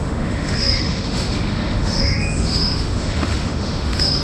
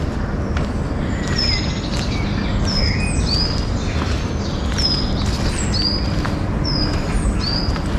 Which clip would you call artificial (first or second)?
first